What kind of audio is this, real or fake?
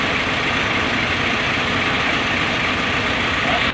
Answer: real